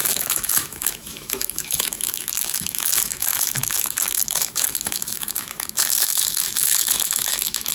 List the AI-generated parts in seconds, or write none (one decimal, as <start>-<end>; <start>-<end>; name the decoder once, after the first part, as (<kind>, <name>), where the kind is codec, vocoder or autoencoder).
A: 0.0-7.7 (autoencoder, DAC-VAE)